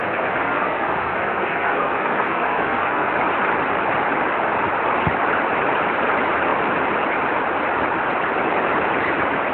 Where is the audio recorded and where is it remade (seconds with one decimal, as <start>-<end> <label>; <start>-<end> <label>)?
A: 0.0-3.1 remade; 3.1-9.5 recorded